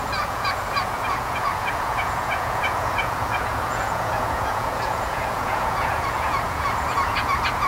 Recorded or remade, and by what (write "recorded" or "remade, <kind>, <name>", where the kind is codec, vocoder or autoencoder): remade, vocoder, Vocos